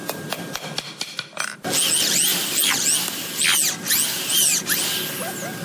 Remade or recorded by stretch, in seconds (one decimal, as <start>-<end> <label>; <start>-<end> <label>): 0.0-5.6 recorded